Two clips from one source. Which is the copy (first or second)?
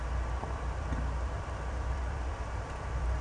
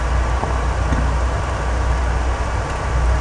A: first